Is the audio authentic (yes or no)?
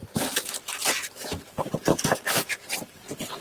no